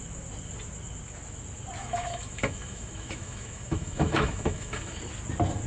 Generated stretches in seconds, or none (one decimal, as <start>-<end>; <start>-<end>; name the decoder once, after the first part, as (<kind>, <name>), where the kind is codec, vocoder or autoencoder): 1.8-5.0 (autoencoder, DAC-VAE)